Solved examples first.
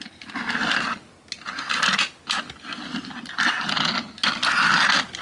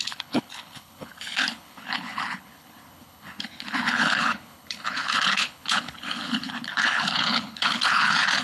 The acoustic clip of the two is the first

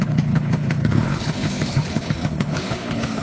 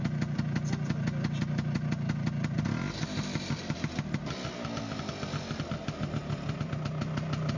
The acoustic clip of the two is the second